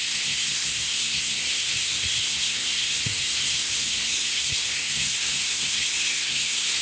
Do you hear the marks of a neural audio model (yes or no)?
yes